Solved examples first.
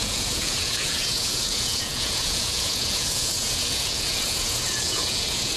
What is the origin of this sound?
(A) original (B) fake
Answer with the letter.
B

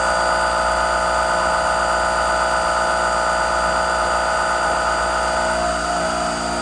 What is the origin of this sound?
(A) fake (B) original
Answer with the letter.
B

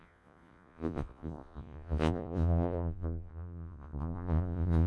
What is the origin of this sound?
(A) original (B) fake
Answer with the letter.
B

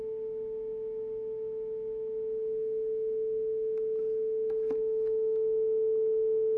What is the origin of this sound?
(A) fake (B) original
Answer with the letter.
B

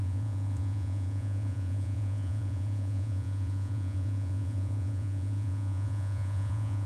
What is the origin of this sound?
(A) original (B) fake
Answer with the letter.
B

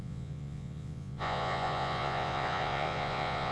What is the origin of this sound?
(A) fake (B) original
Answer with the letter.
A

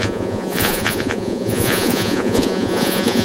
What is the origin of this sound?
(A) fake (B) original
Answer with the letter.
A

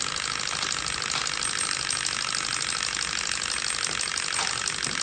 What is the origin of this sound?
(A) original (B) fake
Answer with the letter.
A